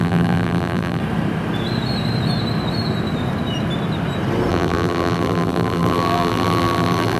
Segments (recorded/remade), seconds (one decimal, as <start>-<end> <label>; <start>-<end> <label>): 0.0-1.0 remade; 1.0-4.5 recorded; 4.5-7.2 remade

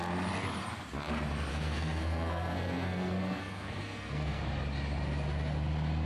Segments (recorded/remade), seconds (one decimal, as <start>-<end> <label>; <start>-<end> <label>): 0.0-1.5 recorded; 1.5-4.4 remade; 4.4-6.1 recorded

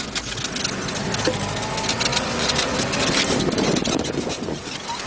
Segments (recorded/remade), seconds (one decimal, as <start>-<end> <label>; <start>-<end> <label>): 0.0-2.1 recorded; 2.1-2.7 remade; 2.7-3.8 recorded; 3.8-4.6 remade; 4.6-5.1 recorded